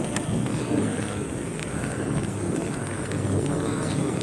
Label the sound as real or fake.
fake